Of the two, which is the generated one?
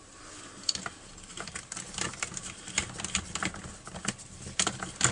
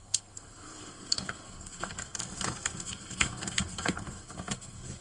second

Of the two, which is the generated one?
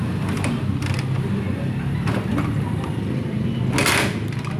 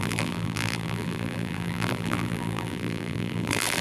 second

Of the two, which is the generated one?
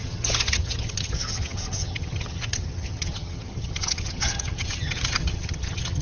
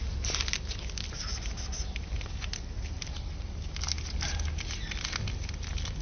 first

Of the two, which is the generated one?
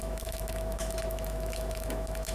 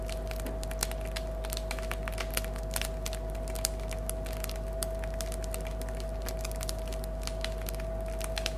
first